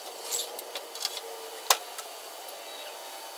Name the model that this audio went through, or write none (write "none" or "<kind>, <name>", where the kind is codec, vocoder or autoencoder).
none